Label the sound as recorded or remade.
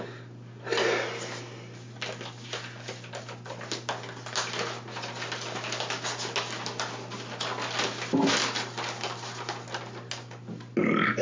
recorded